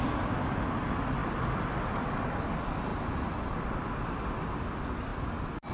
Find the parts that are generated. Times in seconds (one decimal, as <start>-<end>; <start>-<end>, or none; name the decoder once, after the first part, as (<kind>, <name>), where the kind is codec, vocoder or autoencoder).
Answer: none